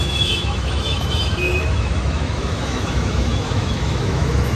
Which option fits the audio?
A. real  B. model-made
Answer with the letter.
B